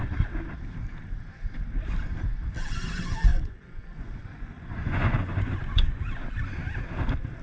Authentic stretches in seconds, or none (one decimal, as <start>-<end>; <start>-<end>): 0.0-3.3; 6.0-7.4